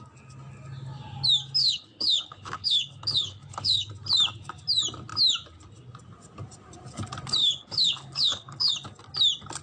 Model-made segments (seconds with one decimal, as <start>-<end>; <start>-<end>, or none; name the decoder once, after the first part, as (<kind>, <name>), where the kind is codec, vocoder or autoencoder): 1.6-3.9 (codec, HILCodec); 7.4-8.7